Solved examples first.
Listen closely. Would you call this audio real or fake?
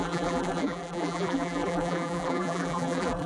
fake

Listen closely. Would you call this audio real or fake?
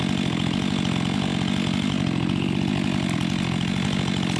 real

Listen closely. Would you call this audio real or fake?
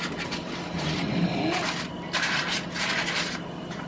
real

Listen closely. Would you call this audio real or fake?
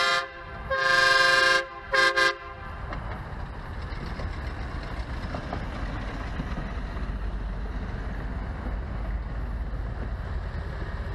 real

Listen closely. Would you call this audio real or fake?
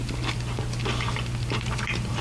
real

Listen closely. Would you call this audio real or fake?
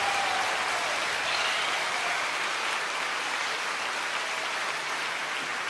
real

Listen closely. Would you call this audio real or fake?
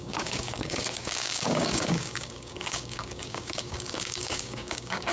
fake